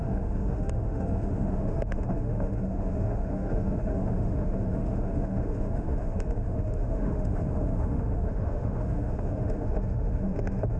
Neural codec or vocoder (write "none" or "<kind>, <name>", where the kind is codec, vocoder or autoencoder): autoencoder, DAC-VAE